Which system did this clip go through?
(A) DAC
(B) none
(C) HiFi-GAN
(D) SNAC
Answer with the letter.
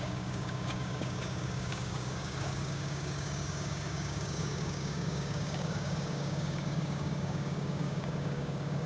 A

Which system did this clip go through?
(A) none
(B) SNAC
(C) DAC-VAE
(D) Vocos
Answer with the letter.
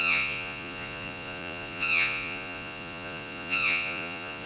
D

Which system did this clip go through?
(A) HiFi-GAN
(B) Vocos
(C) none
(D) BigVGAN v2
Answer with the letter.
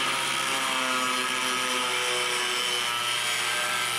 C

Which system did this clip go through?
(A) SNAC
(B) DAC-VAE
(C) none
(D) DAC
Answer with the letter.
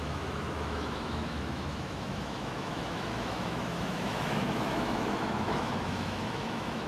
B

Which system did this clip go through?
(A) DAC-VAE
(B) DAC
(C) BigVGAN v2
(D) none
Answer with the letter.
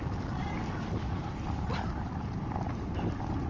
D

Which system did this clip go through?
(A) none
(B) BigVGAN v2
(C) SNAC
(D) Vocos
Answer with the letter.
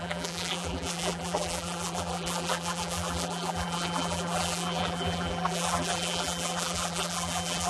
B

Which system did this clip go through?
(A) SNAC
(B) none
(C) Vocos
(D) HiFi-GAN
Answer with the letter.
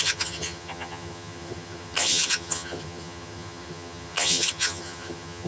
D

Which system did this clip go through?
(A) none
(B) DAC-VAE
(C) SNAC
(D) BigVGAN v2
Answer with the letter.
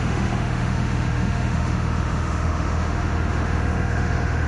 B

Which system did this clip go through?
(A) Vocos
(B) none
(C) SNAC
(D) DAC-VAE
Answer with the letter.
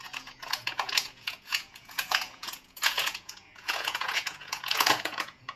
A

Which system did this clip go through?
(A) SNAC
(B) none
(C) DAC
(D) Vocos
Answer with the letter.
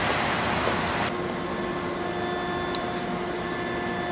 B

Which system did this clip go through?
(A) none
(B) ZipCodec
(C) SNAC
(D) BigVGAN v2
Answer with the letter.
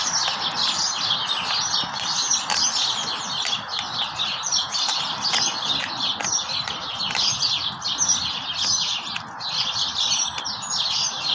A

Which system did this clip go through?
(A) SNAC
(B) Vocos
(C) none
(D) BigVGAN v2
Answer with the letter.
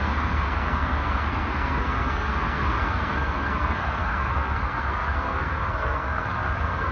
A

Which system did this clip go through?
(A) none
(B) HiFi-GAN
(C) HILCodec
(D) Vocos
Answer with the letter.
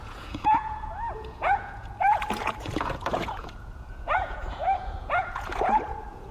D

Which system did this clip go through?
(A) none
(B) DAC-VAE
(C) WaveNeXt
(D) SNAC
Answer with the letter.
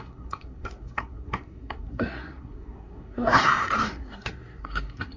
D